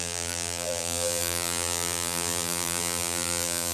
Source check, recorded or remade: remade